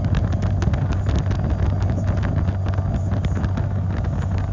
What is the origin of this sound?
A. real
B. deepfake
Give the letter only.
A